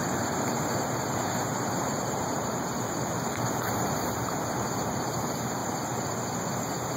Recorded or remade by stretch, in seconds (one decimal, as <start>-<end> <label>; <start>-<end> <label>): 0.0-5.6 remade; 5.6-6.4 recorded; 6.4-7.0 remade